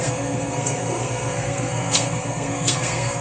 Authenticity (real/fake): fake